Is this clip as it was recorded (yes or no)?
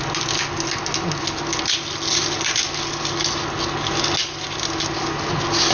yes